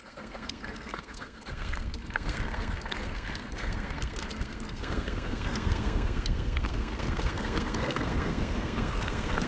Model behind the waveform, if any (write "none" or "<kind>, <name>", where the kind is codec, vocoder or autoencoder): codec, SNAC